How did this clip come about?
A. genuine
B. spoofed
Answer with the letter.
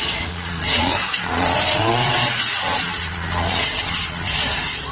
B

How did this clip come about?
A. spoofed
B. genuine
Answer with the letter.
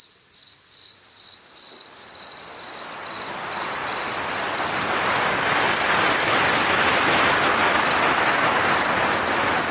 B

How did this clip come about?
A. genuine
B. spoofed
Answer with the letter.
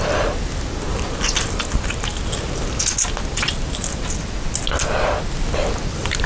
A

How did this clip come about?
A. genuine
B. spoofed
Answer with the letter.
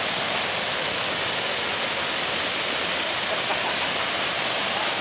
A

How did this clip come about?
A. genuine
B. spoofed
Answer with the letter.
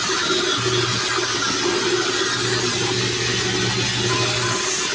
A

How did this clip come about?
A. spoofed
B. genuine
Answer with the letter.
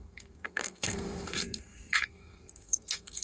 A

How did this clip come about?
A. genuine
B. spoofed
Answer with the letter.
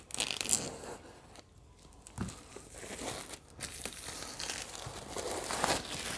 A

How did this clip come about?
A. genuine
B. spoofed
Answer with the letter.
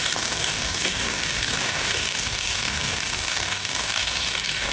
B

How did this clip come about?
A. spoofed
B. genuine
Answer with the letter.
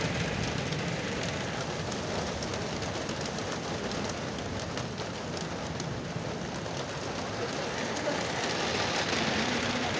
B